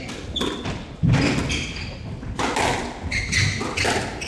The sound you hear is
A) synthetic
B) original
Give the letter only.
B